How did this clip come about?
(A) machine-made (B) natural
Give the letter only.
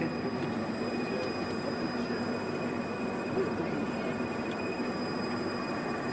A